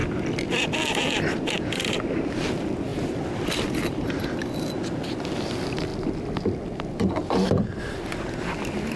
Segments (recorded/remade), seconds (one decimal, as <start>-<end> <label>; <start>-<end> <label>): 0.0-2.0 remade; 2.0-2.9 recorded; 2.9-4.3 remade; 4.3-9.0 recorded